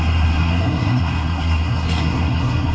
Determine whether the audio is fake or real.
fake